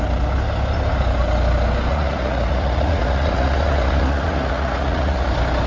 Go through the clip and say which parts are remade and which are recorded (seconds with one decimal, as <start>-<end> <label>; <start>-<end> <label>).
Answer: 0.0-1.9 recorded; 1.9-5.3 remade; 5.3-5.7 recorded